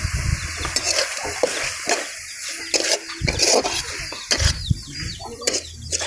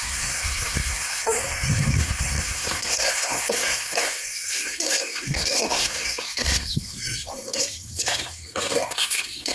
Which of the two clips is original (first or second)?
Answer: first